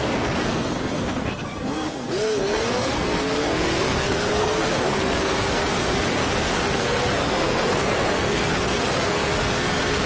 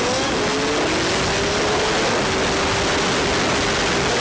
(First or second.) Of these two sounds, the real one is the second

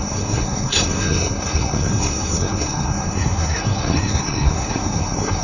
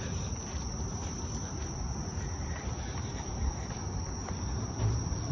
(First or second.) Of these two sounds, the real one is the second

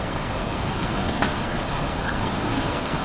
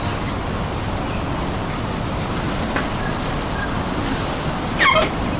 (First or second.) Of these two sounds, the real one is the second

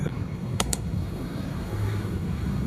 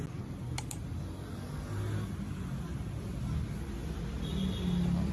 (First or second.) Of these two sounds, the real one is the second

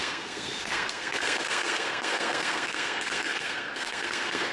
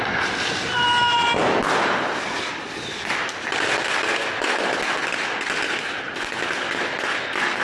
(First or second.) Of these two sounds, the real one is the second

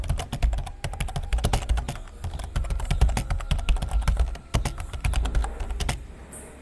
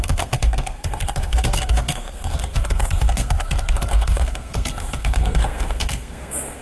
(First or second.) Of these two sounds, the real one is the first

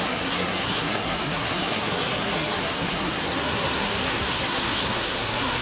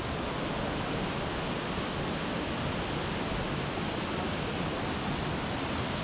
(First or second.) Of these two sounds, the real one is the second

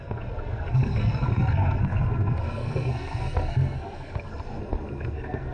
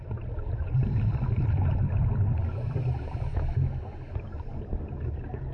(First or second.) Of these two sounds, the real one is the second